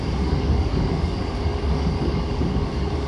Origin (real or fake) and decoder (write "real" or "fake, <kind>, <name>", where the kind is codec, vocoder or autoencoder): fake, codec, DAC